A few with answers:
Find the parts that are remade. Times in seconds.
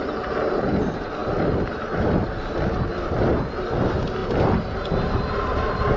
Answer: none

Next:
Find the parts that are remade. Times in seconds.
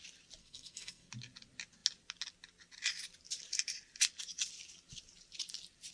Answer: 0.4-1.1 (codec, SNAC)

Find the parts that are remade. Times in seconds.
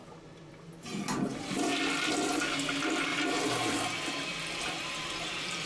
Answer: 3.1-5.7 (vocoder, BigVGAN v2)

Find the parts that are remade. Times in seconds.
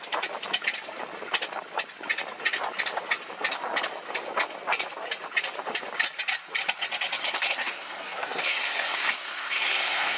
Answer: 7.2-10.2 (codec, SNAC)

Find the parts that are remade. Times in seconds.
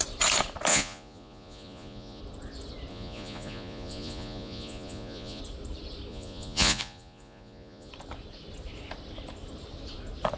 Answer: 0.7-2.2 (vocoder, Vocos); 2.9-5.4; 6.1-7.9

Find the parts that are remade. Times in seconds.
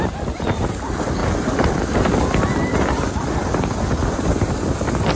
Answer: 1.2-1.9 (vocoder, BigVGAN v2); 2.7-5.2